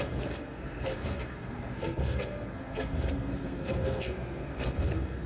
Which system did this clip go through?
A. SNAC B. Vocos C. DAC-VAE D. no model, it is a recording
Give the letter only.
A